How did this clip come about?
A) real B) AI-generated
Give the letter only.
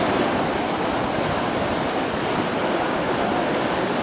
A